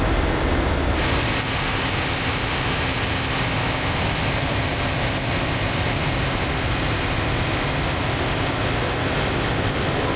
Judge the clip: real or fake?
real